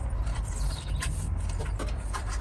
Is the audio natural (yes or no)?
no